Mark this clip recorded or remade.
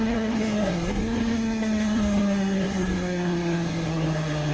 remade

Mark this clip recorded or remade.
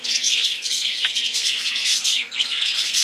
remade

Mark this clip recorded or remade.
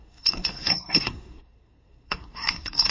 remade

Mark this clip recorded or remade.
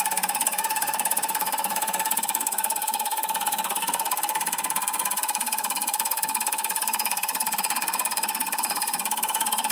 remade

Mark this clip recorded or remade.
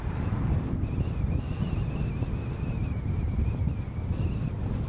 recorded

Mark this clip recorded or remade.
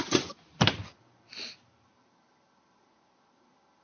recorded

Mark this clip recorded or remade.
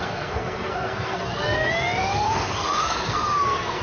remade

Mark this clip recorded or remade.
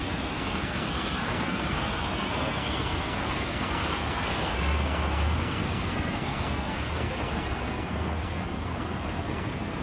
remade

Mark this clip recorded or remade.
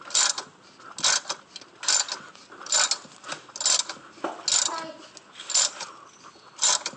recorded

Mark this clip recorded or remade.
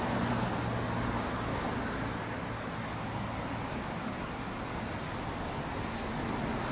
recorded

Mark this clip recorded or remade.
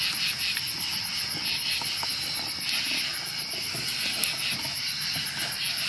recorded